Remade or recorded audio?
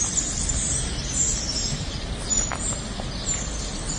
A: recorded